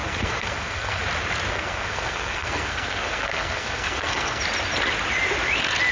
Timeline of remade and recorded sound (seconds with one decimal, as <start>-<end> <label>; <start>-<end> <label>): 0.0-1.0 remade; 1.0-1.5 recorded; 1.5-4.4 remade; 4.4-5.9 recorded